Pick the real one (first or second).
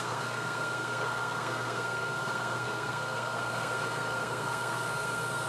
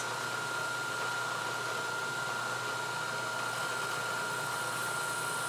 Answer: second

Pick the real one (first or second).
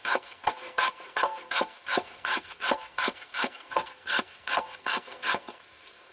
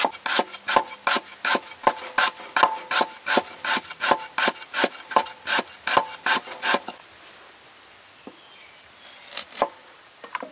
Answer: second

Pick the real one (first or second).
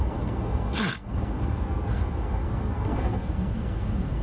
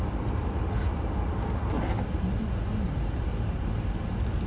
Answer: second